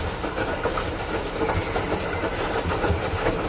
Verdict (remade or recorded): recorded